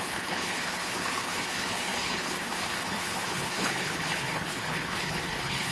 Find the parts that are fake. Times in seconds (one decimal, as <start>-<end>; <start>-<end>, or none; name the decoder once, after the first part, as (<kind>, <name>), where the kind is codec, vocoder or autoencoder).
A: 0.0-5.7 (codec, HILCodec)